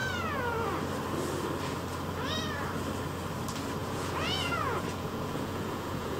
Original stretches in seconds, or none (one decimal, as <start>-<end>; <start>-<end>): 0.0-3.8